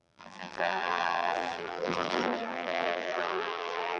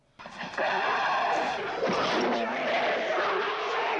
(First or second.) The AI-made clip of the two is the first